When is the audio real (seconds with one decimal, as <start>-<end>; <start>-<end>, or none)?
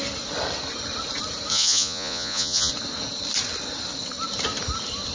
0.0-1.5; 2.7-5.1